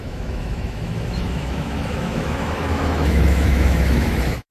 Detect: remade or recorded remade